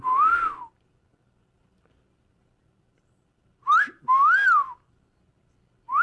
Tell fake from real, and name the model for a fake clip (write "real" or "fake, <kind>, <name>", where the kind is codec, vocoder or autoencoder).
real